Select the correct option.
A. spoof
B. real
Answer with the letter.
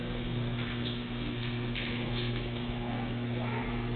A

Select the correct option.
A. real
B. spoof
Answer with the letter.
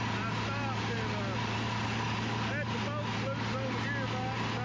A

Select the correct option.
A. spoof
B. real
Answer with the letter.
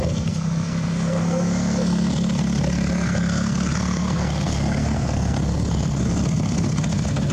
A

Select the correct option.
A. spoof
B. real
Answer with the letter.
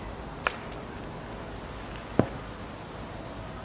B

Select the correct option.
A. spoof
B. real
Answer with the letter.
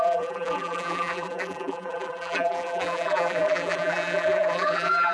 A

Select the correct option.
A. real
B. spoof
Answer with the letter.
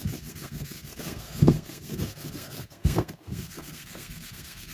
B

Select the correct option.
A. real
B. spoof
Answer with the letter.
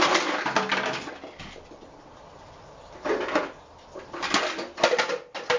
A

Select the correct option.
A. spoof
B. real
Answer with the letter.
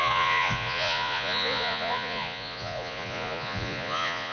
A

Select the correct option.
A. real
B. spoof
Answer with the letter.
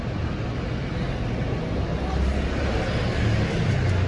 A